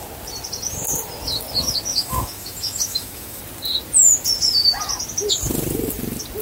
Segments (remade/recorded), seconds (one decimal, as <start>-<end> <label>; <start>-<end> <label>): 0.0-1.9 recorded; 1.9-3.4 remade; 3.4-6.4 recorded